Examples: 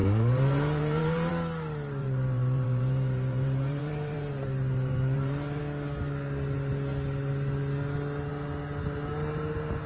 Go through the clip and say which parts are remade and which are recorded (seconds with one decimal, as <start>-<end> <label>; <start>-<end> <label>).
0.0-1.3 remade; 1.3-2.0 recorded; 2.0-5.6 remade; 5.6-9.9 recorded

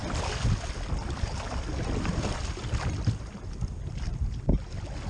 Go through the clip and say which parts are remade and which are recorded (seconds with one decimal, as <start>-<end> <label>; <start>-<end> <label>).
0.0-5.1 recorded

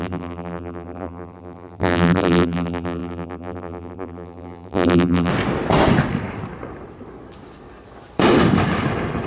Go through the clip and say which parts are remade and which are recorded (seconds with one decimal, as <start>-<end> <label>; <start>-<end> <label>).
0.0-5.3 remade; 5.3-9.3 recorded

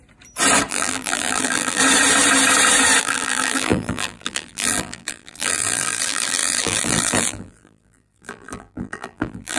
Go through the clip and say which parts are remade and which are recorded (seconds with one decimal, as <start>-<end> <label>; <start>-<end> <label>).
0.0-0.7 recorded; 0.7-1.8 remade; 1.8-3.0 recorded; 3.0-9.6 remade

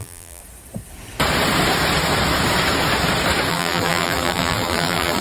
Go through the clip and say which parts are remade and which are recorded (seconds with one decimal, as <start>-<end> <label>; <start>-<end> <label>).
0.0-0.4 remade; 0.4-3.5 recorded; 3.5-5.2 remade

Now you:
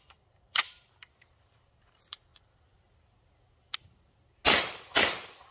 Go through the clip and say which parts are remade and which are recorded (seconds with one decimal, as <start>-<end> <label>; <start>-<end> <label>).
0.0-2.3 remade; 2.3-5.5 recorded

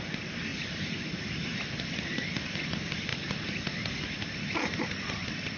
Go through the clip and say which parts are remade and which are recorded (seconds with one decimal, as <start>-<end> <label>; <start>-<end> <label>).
0.0-3.1 remade; 3.1-4.4 recorded; 4.4-5.6 remade

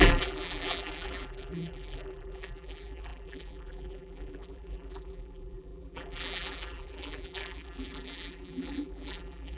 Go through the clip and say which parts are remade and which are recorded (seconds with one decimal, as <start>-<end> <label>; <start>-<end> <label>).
0.0-9.6 remade